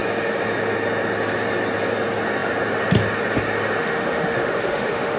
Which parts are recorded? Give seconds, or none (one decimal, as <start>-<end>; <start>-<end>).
0.0-3.8